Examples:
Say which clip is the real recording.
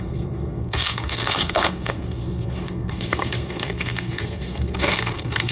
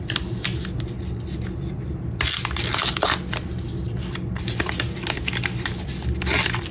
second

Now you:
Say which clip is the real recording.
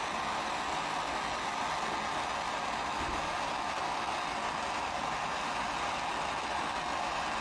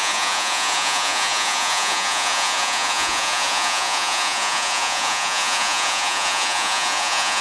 first